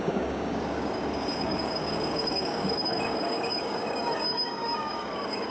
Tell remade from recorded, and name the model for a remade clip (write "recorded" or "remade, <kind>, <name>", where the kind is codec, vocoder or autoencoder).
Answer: remade, codec, DAC